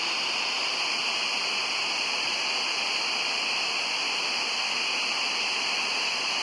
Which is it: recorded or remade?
recorded